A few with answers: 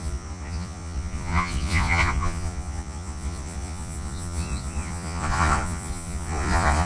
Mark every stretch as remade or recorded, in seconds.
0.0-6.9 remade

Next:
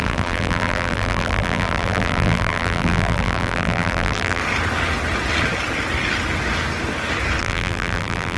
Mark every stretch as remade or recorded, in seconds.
0.0-4.4 remade; 4.4-7.4 recorded; 7.4-8.4 remade

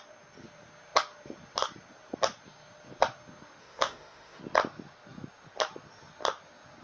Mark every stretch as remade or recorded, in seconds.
0.0-3.6 recorded; 3.6-4.4 remade; 4.4-6.8 recorded

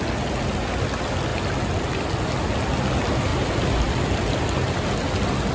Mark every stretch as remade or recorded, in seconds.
0.0-5.5 recorded

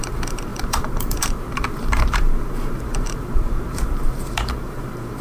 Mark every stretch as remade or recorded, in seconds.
0.0-5.2 remade

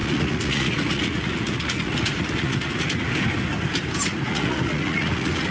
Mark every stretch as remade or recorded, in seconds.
0.0-3.1 remade; 3.1-4.1 recorded; 4.1-5.5 remade